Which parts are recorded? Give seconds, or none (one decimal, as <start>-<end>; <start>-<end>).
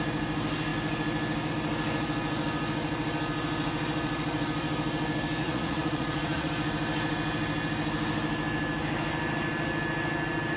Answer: 0.0-5.4; 6.5-10.6